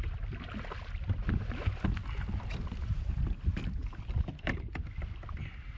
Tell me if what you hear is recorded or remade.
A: recorded